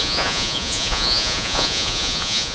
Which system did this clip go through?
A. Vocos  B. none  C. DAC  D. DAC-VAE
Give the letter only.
A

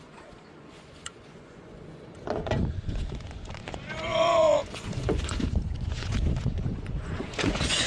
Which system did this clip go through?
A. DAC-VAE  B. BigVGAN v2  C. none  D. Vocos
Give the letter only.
D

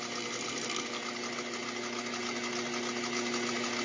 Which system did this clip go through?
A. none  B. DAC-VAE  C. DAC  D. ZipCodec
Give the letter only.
A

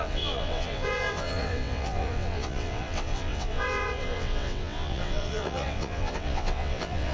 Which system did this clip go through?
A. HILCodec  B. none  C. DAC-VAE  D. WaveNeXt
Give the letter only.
D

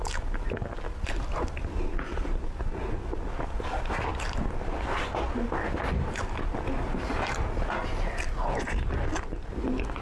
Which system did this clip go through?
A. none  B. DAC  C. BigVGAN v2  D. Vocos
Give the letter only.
A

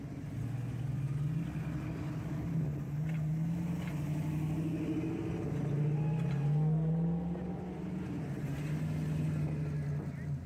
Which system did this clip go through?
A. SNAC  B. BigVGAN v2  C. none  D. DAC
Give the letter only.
C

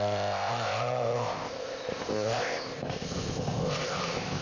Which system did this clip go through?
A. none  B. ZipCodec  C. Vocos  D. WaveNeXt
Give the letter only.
B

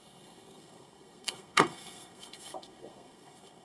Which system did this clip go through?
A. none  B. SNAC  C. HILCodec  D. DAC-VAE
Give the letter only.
B